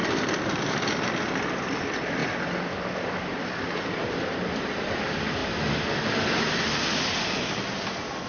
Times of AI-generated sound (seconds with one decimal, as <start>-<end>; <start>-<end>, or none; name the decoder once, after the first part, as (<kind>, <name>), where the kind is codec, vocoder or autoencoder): 0.0-1.2 (vocoder, BigVGAN v2); 2.2-4.9

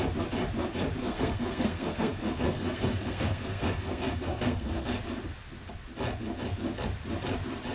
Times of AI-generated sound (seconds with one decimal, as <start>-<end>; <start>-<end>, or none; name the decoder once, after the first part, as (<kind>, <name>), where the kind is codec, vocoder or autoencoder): 1.0-5.0 (codec, SNAC)

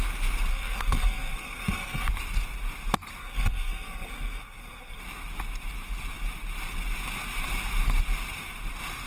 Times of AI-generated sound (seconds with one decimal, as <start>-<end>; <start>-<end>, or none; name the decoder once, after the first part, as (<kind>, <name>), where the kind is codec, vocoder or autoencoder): 0.5-2.1 (codec, SNAC); 3.2-5.0